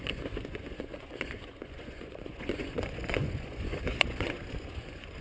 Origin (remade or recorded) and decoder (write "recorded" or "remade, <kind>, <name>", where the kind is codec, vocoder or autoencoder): remade, vocoder, Vocos